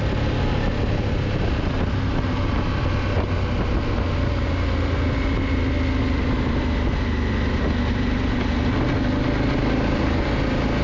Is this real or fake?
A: real